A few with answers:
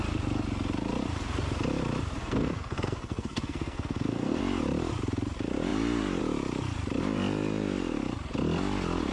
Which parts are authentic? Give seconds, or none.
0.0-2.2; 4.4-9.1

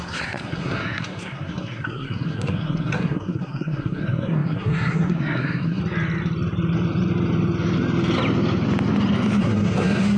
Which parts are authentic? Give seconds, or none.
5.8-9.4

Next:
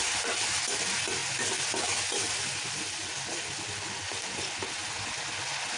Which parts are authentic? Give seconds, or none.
0.0-5.8